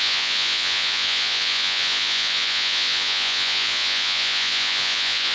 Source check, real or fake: fake